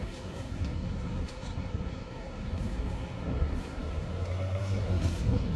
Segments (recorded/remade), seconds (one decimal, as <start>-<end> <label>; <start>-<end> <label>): 0.0-5.6 remade